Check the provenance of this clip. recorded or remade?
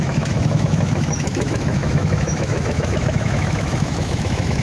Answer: remade